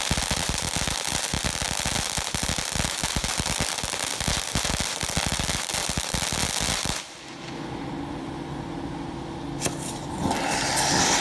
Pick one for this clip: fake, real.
real